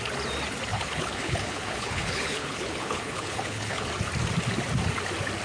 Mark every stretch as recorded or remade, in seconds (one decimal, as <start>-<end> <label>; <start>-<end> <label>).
0.0-0.7 recorded; 0.7-3.9 remade; 3.9-5.4 recorded